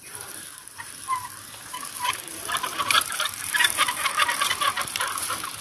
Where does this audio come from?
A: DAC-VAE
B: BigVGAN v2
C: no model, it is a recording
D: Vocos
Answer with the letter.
B